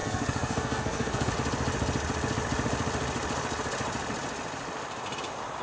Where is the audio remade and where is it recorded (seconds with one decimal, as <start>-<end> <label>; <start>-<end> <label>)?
0.0-1.3 remade; 1.3-5.6 recorded